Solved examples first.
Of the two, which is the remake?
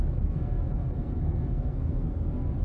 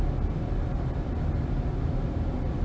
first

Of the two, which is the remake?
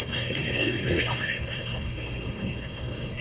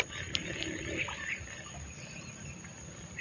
first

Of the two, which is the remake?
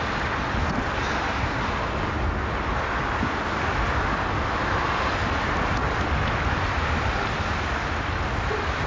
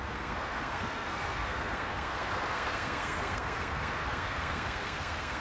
second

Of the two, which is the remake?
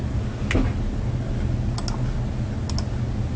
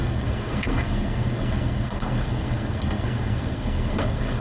second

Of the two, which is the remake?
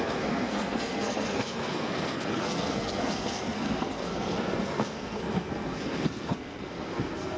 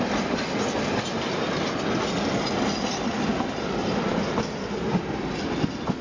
first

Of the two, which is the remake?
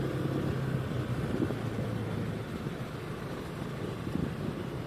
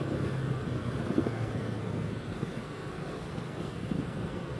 second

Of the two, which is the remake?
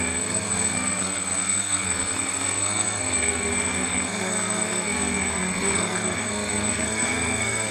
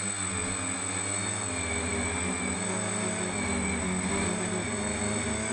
first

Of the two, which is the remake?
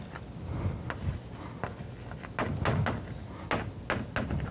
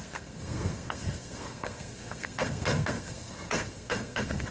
second